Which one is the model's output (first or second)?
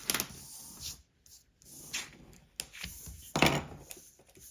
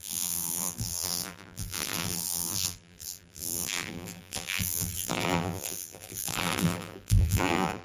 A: second